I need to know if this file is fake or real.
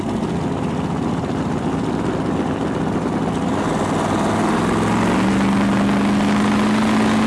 real